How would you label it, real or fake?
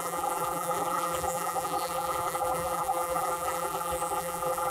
fake